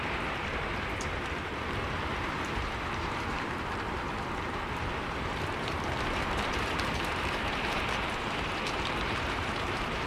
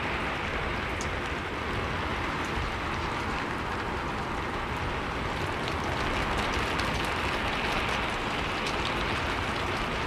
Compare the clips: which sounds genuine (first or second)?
second